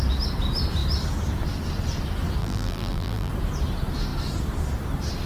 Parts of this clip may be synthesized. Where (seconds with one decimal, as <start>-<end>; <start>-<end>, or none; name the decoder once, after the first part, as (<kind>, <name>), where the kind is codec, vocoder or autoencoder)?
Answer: 2.4-3.3 (vocoder, BigVGAN v2)